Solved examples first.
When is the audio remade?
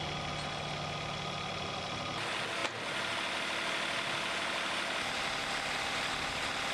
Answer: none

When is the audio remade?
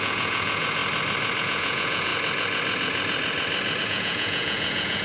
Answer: 0.0-0.8 (vocoder, Vocos); 1.4-2.1; 3.8-5.0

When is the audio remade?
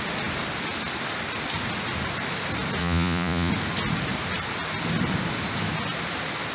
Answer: 2.8-3.5 (vocoder, Vocos)